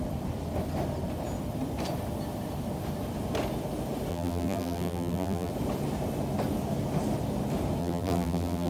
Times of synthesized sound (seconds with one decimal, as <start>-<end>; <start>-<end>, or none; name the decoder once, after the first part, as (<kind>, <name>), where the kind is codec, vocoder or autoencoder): 4.1-5.5 (vocoder, BigVGAN v2); 7.8-8.7